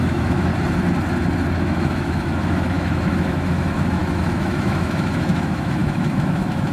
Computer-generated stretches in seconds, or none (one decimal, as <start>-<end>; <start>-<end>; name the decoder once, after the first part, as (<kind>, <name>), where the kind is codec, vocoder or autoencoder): 0.0-0.5 (autoencoder, DAC-VAE); 1.6-6.7

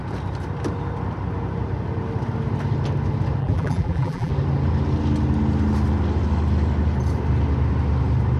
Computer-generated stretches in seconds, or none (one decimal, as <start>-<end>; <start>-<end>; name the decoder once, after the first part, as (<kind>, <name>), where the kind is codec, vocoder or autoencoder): 3.4-4.3 (vocoder, BigVGAN v2)

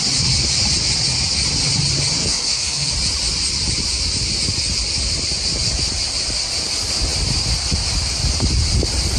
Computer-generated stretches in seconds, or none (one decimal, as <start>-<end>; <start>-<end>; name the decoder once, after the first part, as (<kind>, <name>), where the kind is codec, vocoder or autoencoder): 2.2-2.9 (codec, SNAC)

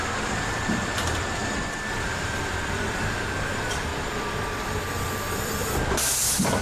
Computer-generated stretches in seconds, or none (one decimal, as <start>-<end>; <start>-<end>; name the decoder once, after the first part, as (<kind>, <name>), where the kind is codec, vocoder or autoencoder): 0.0-3.9 (vocoder, BigVGAN v2); 4.8-6.6

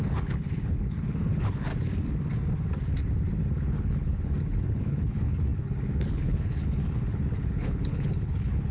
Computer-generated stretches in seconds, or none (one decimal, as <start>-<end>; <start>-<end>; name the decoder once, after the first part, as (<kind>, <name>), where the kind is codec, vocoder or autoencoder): 0.0-1.7 (codec, HILCodec); 3.4-8.7

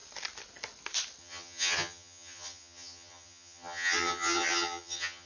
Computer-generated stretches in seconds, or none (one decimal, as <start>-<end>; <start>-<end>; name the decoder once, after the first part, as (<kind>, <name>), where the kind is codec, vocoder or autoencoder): 1.2-5.3 (vocoder, HiFi-GAN)

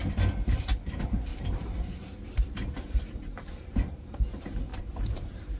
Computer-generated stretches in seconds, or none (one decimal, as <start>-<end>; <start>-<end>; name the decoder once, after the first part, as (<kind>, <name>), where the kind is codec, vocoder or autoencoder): 1.3-4.2 (vocoder, BigVGAN v2); 4.7-5.6

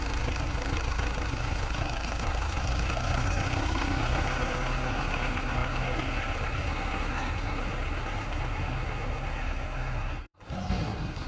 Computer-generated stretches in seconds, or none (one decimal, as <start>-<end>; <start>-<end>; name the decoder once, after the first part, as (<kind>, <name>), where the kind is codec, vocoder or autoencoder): 0.0-11.3 (codec, SNAC)